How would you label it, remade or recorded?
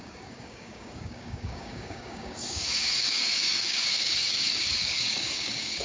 remade